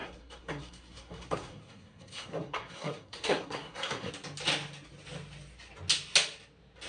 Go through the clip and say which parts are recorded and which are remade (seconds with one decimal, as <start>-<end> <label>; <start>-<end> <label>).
0.0-4.1 remade; 4.1-6.9 recorded